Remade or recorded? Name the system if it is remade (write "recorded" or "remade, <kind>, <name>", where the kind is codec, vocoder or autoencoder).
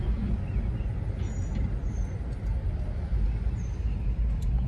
recorded